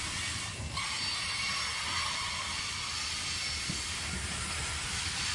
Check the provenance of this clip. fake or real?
real